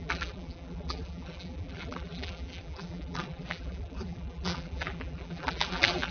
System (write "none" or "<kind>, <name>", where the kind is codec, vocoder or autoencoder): vocoder, BigVGAN v2